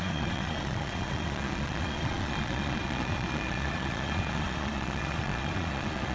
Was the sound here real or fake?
fake